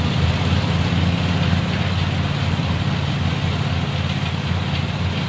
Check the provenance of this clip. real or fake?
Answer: real